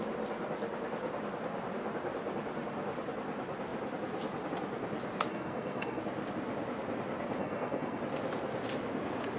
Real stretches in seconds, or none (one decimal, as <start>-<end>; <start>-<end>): 0.0-5.3; 6.0-7.4; 8.0-9.4

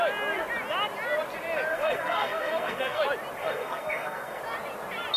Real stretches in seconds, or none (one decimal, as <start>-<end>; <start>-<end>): 0.0-1.7; 3.0-3.4; 4.4-5.2